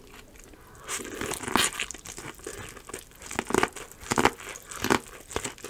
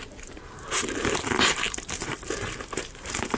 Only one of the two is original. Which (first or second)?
first